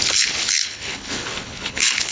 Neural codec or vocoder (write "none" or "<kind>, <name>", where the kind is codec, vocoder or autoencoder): codec, HILCodec